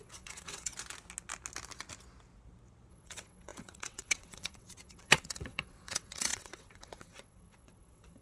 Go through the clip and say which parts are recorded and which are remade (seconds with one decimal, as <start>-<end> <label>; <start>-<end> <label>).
0.0-0.7 remade; 0.7-2.9 recorded; 2.9-8.2 remade